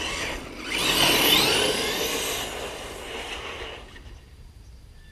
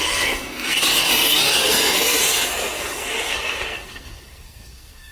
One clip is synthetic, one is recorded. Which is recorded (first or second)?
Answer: first